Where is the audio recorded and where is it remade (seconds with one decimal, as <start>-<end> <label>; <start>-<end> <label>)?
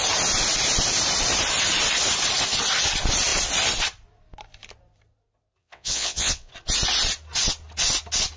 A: 0.0-5.6 recorded; 5.6-6.5 remade; 6.5-8.4 recorded